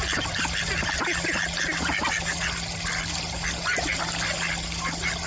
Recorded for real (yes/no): yes